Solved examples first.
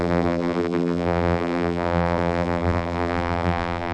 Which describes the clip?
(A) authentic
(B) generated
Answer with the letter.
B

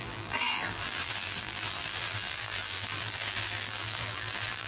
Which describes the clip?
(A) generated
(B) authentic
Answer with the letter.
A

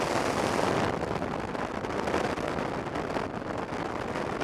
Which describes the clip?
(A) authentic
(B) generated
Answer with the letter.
A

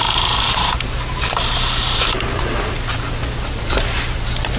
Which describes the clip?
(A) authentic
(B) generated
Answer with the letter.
B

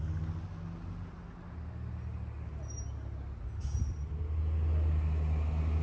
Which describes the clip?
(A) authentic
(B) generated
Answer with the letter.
A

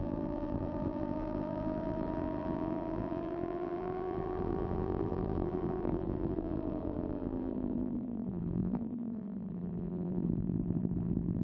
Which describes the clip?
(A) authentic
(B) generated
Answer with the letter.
B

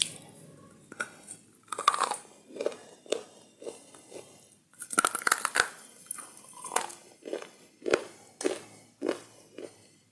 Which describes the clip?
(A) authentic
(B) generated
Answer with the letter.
A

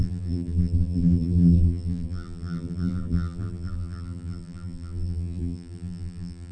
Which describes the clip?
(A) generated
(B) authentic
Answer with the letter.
A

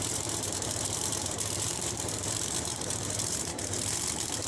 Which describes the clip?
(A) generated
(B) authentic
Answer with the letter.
A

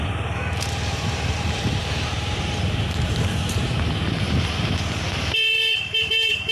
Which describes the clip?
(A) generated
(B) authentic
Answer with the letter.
A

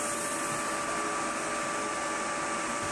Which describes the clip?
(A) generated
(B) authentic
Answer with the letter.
A